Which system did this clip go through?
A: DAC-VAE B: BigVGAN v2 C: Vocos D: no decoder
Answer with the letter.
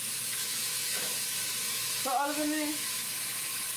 A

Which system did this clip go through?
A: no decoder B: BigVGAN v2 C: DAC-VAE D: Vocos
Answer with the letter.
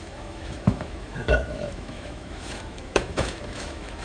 C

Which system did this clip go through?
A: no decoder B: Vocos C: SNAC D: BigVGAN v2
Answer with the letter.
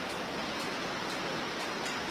A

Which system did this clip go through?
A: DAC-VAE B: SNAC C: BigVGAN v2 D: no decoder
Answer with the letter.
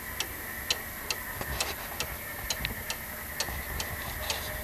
D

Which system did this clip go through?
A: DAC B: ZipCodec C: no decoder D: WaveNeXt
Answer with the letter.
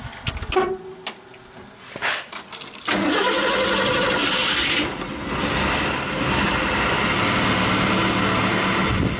C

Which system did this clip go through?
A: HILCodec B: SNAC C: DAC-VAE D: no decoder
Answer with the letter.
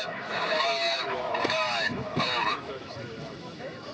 C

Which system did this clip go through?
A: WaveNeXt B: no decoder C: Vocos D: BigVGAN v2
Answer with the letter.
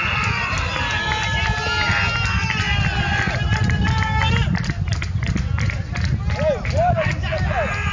B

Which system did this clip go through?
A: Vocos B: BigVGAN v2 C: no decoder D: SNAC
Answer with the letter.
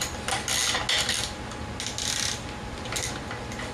C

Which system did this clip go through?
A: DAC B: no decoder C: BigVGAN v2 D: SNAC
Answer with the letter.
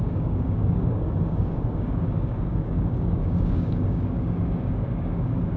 A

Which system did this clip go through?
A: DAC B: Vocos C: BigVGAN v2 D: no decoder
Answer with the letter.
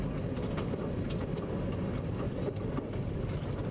D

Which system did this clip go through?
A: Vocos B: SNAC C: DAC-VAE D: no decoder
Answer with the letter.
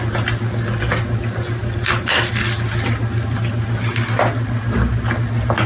D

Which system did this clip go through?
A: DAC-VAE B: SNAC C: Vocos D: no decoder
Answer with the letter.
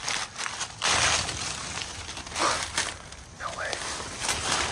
D